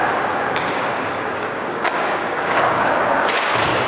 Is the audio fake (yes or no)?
yes